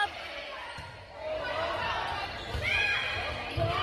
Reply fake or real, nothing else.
real